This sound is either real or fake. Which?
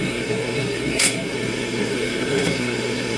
fake